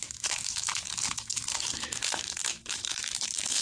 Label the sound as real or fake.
fake